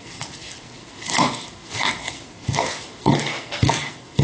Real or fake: fake